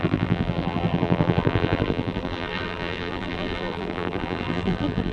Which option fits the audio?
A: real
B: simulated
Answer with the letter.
B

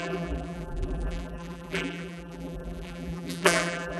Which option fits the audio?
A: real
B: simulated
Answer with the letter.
B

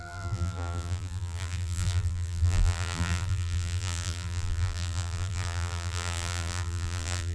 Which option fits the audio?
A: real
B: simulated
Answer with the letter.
B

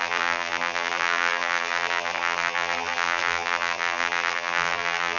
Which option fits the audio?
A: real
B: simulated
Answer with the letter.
B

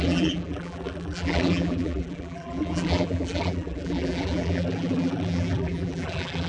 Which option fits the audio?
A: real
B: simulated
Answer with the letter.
B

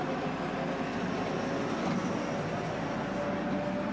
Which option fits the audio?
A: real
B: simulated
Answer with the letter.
A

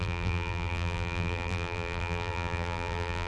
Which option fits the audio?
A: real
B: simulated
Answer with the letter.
B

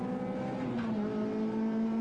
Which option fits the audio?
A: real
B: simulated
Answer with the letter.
A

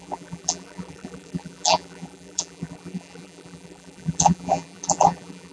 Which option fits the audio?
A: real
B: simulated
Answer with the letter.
B